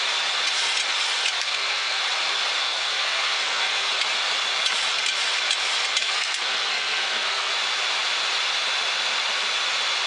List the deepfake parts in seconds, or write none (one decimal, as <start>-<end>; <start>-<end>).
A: 1.4-2.0; 2.6-3.9; 6.0-7.5